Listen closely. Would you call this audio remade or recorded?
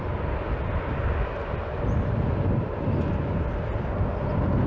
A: recorded